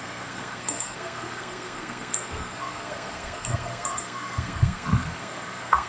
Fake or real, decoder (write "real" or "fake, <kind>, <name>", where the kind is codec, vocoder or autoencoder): fake, codec, SNAC